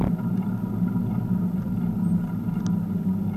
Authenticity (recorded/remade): recorded